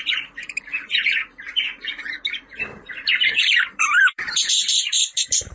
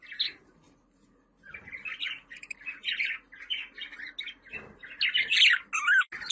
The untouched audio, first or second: second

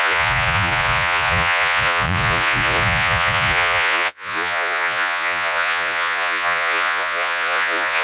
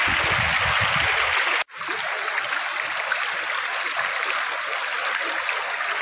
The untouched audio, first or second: second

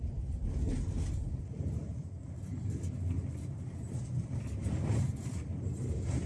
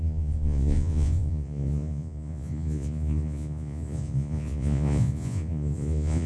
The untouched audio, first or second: first